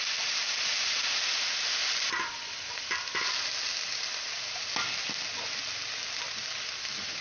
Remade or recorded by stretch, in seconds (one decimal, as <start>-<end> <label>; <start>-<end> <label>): 0.0-7.2 recorded

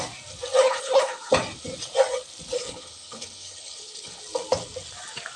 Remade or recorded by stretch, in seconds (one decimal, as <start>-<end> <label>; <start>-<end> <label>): 0.0-0.6 recorded; 0.6-1.3 remade; 1.3-2.6 recorded; 2.6-4.2 remade; 4.2-5.4 recorded